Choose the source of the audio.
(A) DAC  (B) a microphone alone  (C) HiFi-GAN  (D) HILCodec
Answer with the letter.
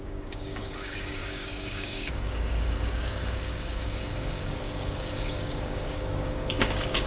A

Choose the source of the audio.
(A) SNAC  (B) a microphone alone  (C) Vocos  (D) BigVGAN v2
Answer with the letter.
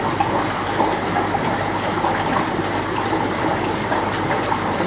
B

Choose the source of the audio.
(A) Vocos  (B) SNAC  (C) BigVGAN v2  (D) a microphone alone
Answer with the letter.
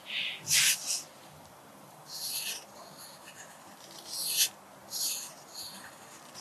C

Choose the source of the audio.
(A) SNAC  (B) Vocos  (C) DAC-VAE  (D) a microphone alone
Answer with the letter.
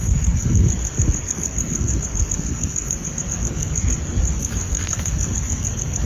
A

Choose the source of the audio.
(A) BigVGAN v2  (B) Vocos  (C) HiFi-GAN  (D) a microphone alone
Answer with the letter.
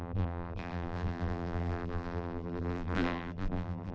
A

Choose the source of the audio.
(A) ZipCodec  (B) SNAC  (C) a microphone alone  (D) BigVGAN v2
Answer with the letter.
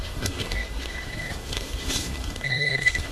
B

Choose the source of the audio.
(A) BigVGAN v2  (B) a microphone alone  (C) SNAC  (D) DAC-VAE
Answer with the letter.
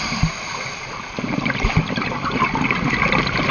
B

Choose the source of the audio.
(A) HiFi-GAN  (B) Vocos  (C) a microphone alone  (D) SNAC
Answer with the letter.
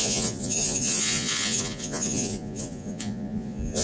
B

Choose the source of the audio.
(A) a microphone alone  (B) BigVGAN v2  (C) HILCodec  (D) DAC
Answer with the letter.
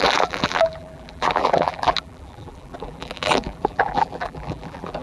B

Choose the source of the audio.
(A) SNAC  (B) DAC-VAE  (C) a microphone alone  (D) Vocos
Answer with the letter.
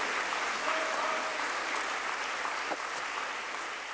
C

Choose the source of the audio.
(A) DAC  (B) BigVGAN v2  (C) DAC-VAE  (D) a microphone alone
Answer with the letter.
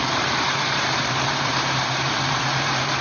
B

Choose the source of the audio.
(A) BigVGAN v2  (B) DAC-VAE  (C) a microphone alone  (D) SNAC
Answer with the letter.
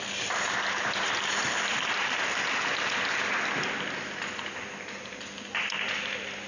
C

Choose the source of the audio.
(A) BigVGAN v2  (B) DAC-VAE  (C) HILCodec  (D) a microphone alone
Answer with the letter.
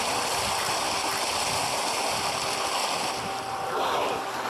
D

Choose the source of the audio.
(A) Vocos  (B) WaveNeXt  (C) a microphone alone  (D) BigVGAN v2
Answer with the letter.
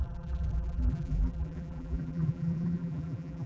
D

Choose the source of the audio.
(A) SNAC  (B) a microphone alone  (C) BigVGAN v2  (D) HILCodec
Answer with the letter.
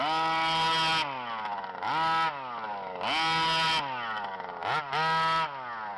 B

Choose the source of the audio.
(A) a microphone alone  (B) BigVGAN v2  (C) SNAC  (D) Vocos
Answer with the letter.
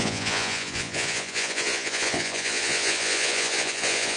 D